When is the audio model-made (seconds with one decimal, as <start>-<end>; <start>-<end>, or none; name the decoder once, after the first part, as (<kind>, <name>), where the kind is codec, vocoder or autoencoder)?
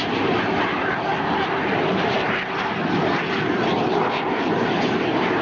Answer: 1.1-4.3 (vocoder, BigVGAN v2)